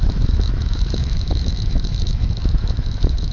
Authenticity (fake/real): fake